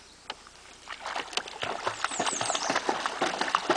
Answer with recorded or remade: recorded